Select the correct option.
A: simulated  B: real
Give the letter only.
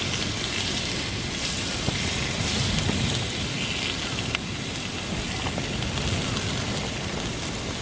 B